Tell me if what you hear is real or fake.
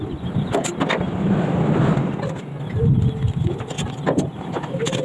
real